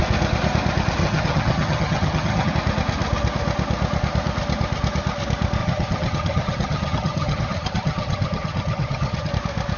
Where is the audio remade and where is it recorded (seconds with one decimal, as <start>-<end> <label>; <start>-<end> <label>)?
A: 0.0-1.0 recorded; 1.0-2.5 remade; 2.5-5.6 recorded; 5.6-9.3 remade; 9.3-9.8 recorded

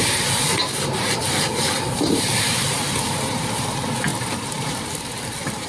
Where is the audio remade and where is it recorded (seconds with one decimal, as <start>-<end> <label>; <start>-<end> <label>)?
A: 0.0-5.7 remade